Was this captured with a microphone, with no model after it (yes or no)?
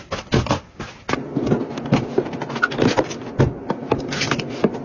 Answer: yes